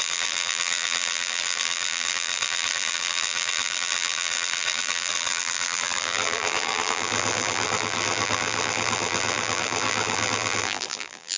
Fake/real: fake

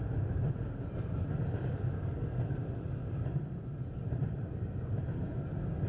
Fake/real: real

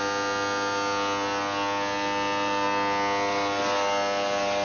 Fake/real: real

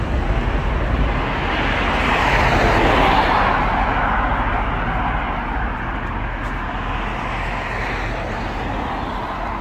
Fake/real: real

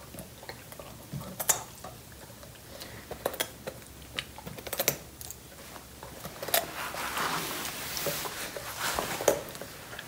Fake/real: real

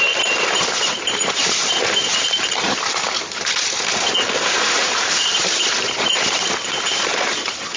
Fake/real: fake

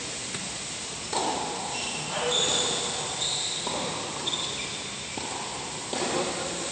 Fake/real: real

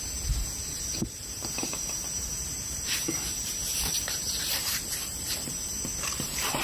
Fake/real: fake